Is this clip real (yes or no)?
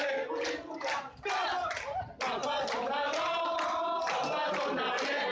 yes